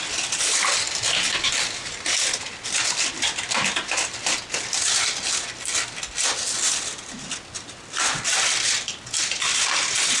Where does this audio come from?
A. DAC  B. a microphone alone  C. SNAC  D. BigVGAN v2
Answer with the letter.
B